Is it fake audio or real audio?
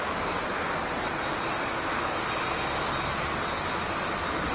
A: real